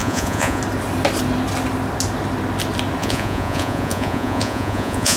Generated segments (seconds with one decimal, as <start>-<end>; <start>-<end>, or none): 0.0-0.6; 3.0-5.2